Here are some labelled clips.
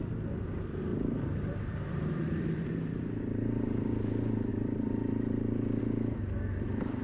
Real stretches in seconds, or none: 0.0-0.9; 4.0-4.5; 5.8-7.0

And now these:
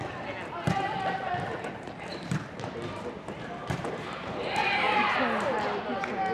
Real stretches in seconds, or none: 0.0-2.1; 5.1-6.3